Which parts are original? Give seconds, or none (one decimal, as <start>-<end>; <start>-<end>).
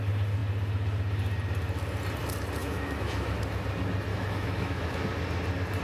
0.0-2.6; 3.4-4.1; 5.1-5.8